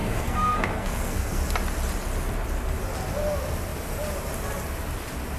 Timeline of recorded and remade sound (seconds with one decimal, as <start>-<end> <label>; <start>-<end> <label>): 0.0-1.4 remade; 1.4-5.4 recorded